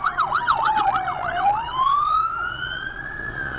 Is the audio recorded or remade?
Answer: remade